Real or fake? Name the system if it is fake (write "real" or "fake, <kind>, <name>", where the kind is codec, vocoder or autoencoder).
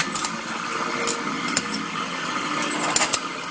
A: real